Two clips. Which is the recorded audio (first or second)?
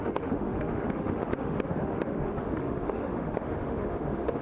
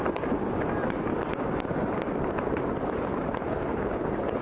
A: second